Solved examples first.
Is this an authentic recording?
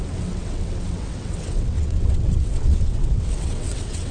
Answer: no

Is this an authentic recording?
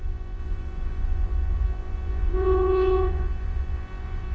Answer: no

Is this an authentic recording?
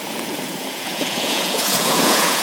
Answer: no